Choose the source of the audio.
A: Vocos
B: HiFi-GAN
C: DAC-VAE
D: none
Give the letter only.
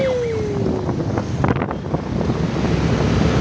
D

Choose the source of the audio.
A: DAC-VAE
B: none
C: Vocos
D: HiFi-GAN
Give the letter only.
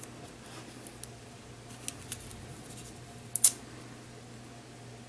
B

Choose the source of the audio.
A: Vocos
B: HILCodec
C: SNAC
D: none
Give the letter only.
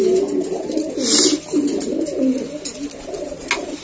D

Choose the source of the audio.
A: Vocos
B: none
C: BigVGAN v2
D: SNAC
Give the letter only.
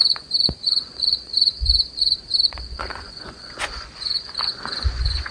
A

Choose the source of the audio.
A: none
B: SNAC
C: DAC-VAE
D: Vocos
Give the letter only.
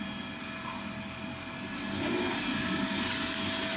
A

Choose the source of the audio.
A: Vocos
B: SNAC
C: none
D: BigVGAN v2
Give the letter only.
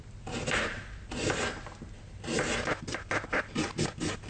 C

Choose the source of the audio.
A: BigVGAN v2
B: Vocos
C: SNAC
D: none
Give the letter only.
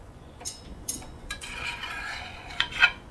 B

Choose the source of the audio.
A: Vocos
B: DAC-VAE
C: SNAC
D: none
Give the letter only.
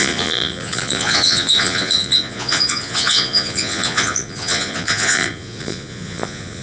A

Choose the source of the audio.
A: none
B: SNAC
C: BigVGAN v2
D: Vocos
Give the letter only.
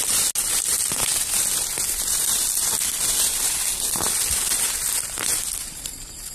A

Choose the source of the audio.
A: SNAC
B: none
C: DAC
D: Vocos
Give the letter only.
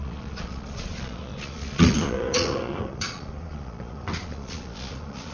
D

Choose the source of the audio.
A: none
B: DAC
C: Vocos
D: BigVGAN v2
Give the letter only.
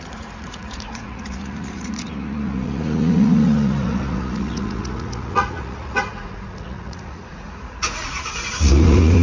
C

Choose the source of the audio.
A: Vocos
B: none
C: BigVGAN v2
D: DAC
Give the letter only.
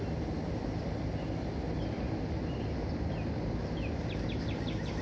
B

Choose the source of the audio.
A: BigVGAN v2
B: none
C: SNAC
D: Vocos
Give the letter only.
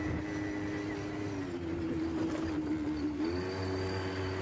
B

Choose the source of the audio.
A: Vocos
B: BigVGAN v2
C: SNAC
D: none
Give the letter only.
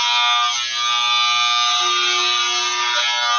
D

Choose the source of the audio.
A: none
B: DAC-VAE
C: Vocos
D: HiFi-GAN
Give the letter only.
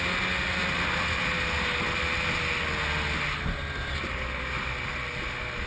A